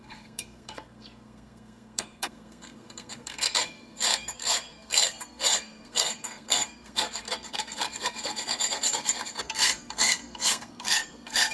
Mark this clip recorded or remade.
remade